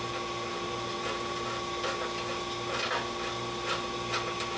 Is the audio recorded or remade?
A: recorded